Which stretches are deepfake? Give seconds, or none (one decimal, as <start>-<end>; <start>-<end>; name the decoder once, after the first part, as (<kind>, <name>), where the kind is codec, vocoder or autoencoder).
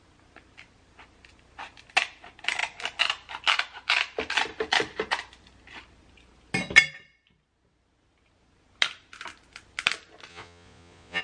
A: 10.3-11.2 (vocoder, Vocos)